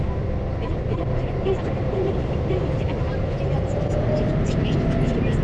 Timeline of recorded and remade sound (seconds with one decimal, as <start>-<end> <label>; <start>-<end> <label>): 0.0-0.7 recorded; 0.7-3.9 remade; 3.9-5.4 recorded